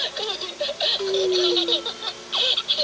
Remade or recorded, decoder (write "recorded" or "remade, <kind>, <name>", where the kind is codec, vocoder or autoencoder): recorded